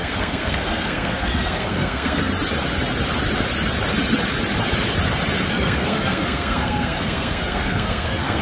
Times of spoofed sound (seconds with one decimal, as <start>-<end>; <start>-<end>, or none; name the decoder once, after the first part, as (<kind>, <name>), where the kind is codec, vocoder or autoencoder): 0.0-2.3 (codec, SNAC); 5.5-8.4